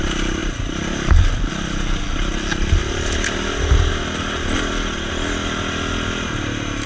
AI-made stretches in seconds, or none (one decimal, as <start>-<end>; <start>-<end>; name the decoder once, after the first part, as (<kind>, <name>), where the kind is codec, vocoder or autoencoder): none